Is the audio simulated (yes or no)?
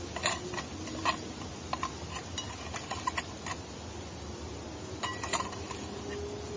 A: no